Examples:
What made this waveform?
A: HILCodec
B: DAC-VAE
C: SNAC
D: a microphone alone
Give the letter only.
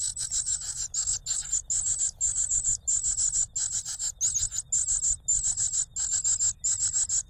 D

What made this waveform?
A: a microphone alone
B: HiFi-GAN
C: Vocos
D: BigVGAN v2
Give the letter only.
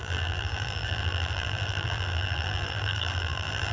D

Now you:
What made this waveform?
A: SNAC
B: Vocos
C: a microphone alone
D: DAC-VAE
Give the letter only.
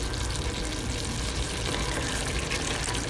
C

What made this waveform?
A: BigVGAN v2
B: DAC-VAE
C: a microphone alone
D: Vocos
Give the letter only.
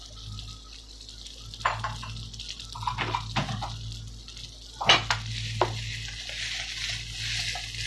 C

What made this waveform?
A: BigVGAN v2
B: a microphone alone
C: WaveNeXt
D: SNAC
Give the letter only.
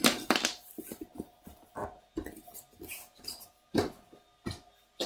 B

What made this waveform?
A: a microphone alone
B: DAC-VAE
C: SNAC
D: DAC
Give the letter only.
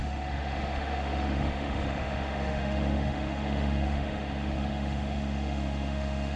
B